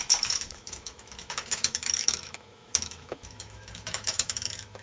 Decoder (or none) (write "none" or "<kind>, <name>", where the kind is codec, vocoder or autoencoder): autoencoder, DAC-VAE